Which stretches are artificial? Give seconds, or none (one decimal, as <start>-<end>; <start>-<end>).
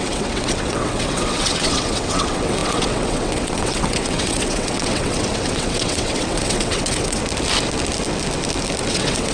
0.0-7.2; 8.9-9.3